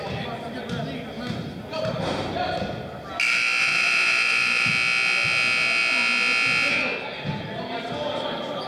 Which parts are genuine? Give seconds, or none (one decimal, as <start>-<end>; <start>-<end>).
0.0-3.6; 4.7-8.7

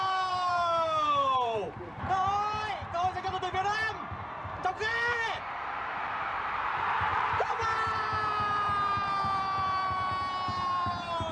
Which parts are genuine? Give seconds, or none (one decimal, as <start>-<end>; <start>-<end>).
none

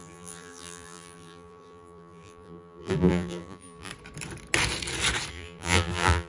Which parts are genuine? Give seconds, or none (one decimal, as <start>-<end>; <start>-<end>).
3.9-5.3

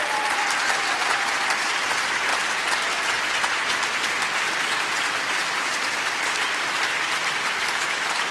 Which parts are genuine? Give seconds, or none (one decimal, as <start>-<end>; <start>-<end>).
2.3-3.2

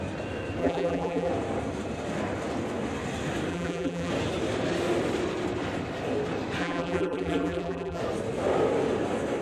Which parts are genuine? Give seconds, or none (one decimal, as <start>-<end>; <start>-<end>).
0.0-0.6; 1.3-3.5; 4.1-6.6; 8.0-9.4

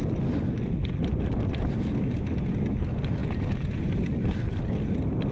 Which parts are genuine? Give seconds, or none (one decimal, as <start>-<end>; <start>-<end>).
0.0-5.3